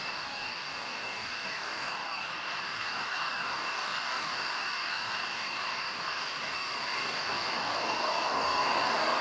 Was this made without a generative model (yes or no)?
no